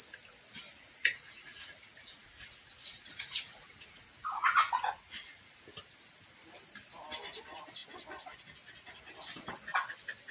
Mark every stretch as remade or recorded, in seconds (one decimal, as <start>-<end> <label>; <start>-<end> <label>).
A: 0.0-0.7 recorded; 0.7-5.5 remade; 5.5-10.3 recorded